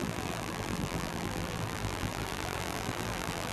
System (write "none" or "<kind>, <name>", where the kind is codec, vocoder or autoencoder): vocoder, BigVGAN v2